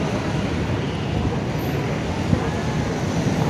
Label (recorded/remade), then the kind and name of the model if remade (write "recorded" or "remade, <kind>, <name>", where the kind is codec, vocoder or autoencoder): recorded